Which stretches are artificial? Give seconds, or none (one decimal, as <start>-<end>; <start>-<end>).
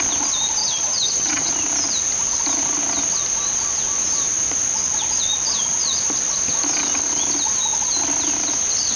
0.6-1.5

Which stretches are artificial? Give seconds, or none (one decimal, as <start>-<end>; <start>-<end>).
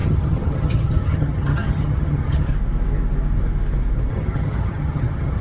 0.0-2.5; 4.1-5.4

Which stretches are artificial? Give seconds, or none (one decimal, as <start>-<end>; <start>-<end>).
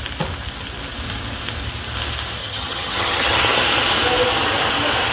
2.4-3.4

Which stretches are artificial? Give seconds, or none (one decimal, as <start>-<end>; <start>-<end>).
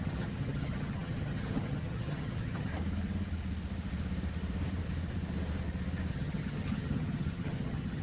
0.0-2.7; 6.1-8.0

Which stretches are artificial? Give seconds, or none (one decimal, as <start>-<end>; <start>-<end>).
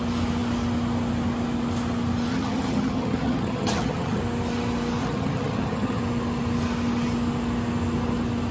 2.3-4.2; 5.0-6.0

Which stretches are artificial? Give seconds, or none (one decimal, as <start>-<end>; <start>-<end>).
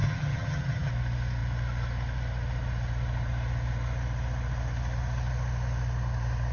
0.0-0.9